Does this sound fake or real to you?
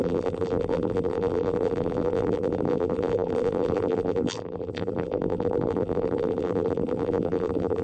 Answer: fake